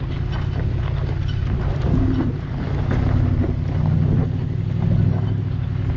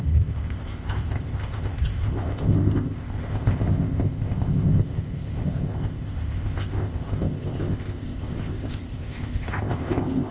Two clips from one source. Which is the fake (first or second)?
second